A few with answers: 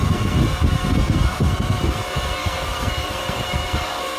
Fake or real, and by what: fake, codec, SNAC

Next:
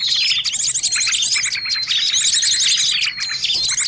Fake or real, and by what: real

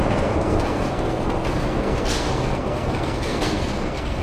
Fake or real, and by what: fake, codec, SNAC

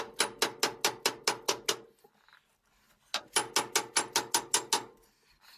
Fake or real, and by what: real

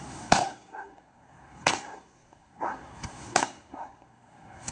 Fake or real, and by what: fake, codec, SNAC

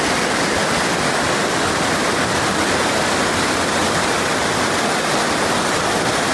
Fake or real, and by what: real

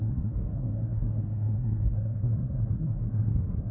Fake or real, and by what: fake, codec, SNAC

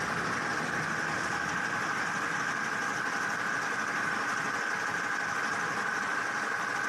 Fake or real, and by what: real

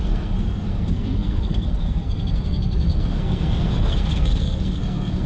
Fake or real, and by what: fake, codec, SNAC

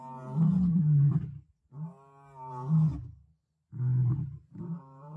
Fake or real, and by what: real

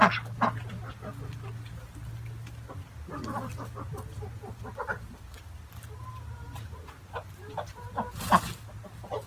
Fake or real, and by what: real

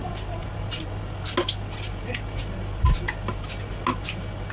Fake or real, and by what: real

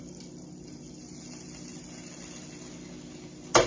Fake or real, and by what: real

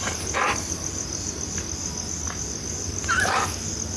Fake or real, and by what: real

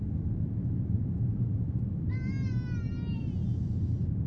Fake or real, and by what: real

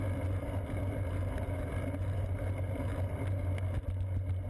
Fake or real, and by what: real